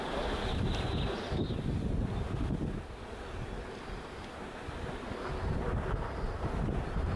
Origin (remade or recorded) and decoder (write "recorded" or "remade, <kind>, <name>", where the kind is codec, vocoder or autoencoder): recorded